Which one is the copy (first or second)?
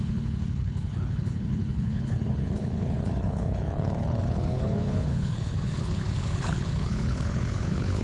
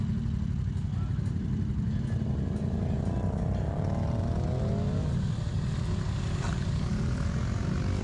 first